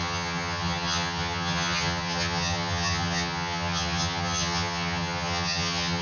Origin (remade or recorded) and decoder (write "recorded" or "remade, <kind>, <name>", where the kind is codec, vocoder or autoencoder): remade, vocoder, HiFi-GAN